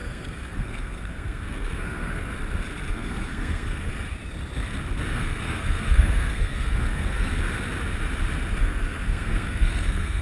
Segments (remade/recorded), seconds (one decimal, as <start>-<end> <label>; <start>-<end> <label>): 0.0-2.3 remade; 2.3-2.9 recorded; 2.9-3.9 remade; 3.9-5.1 recorded; 5.1-7.3 remade; 7.3-8.6 recorded; 8.6-10.2 remade